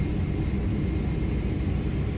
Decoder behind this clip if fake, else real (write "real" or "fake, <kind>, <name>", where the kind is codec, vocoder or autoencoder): real